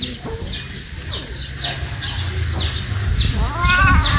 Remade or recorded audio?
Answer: recorded